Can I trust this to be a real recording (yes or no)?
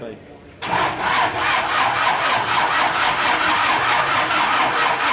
yes